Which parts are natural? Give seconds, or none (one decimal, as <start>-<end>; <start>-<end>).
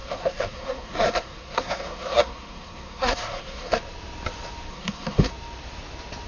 3.8-4.7; 5.3-6.3